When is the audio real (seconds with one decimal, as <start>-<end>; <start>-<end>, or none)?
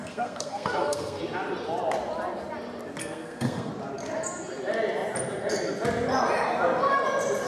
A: 1.2-3.0; 3.7-7.5